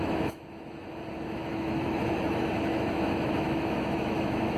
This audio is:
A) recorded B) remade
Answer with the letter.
B